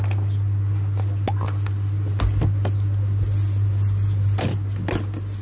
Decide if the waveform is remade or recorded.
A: recorded